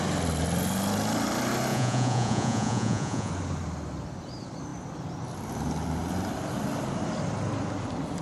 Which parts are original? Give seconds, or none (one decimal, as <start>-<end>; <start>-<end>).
0.0-1.7; 3.3-8.2